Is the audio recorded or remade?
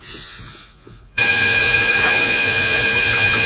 remade